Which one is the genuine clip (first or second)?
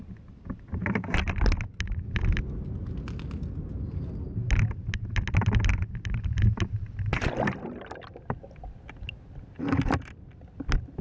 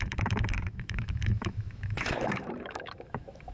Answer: first